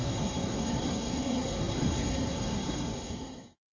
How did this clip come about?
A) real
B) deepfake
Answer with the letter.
B